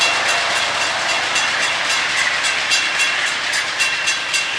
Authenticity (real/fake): real